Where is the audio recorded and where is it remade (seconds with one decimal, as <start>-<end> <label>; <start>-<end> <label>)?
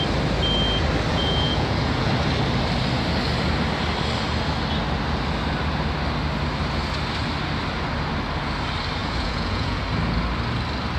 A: 0.0-1.1 recorded; 1.1-2.1 remade; 2.1-9.0 recorded; 9.0-9.8 remade; 9.8-11.0 recorded